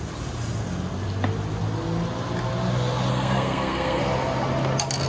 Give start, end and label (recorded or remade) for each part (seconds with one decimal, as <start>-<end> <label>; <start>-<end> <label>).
0.0-3.1 recorded; 3.1-4.0 remade; 4.0-5.1 recorded